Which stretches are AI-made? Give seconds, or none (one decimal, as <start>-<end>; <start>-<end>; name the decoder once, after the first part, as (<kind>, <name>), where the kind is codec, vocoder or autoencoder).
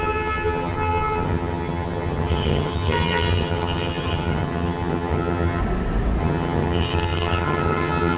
0.0-5.6 (vocoder, HiFi-GAN); 6.2-8.2